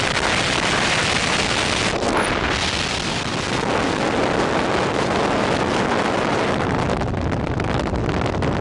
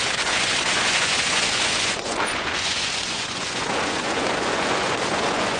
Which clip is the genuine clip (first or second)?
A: first